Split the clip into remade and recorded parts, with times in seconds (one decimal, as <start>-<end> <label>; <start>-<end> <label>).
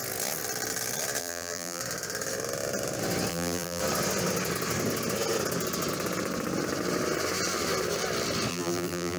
0.0-1.2 recorded; 1.2-1.8 remade; 1.8-3.3 recorded; 3.3-3.8 remade; 3.8-8.5 recorded; 8.5-9.2 remade